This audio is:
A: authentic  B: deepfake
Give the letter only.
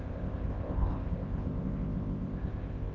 B